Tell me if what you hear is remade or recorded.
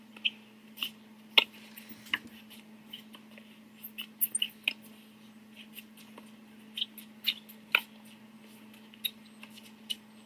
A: recorded